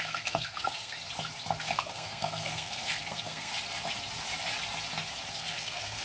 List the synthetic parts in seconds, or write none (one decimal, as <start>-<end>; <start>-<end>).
0.0-1.0; 1.6-3.5; 5.3-6.0